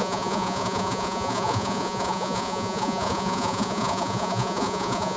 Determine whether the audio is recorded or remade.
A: remade